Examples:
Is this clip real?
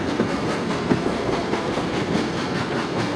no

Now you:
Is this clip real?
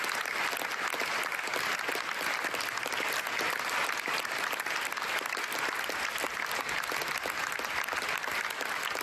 yes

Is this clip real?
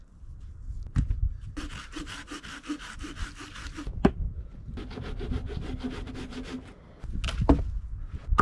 yes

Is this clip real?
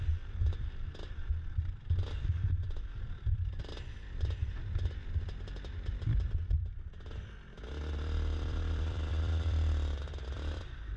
no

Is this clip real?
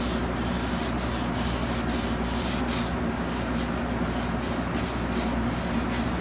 yes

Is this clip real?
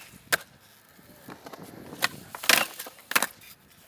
yes